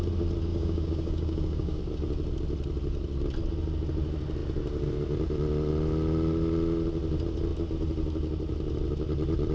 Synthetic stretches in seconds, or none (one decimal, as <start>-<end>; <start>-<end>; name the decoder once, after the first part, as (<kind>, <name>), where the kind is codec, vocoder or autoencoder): 0.5-1.8 (codec, DAC)